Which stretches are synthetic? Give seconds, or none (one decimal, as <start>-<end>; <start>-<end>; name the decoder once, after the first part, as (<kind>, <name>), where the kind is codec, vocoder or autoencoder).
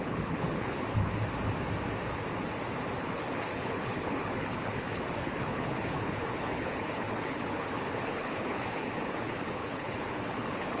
0.0-1.2 (codec, HILCodec); 3.0-10.8